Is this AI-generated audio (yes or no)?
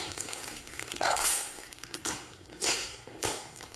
yes